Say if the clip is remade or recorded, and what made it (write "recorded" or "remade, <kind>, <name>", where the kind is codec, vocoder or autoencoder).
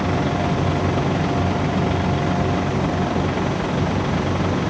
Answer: recorded